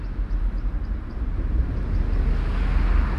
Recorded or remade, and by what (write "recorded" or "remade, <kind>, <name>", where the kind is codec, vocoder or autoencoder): recorded